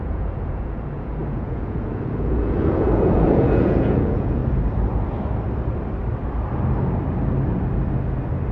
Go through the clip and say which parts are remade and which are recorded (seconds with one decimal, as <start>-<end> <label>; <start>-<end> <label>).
0.0-4.4 remade; 4.4-8.5 recorded